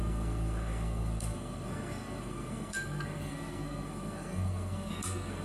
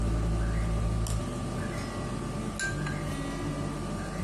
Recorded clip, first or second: second